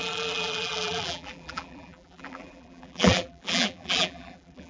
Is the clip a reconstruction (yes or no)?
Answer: yes